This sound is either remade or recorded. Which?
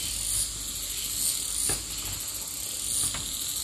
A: recorded